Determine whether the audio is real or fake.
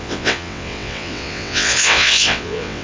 fake